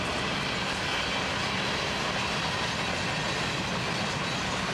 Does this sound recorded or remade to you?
recorded